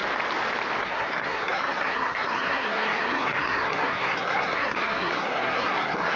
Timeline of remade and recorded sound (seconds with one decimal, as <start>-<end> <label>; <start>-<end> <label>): 0.0-0.8 recorded; 0.8-6.2 remade